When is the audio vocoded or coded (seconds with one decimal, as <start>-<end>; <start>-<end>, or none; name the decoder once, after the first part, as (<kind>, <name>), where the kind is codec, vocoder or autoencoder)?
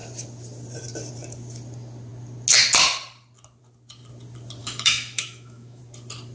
4.6-5.8 (autoencoder, DAC-VAE)